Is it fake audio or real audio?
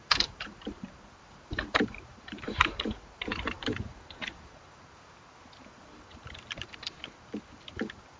fake